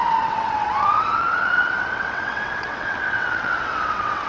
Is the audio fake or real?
fake